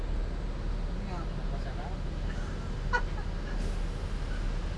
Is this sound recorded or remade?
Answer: recorded